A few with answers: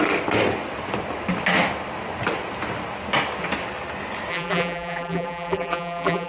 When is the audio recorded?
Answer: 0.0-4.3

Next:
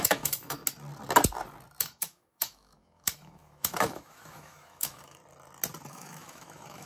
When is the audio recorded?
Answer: 0.6-1.8; 5.2-5.9

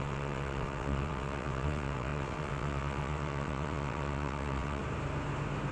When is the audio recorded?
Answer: 4.8-5.7

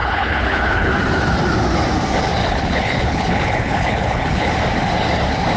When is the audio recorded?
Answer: 0.9-2.4; 4.5-5.6